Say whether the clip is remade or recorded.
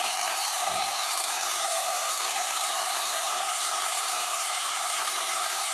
remade